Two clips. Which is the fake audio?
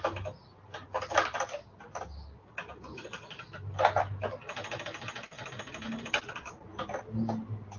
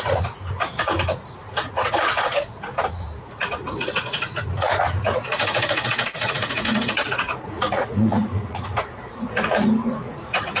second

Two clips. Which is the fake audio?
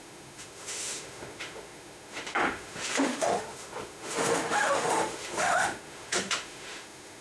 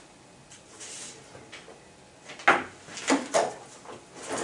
first